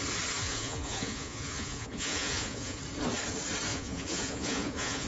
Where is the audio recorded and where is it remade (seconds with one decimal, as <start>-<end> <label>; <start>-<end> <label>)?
0.0-0.4 recorded; 0.4-2.8 remade; 2.8-3.7 recorded; 3.7-5.1 remade